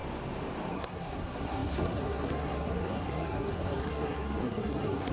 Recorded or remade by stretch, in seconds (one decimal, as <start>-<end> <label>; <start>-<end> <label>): 0.0-0.7 recorded; 0.7-5.1 remade